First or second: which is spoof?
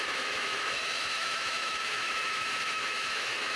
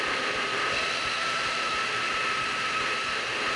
first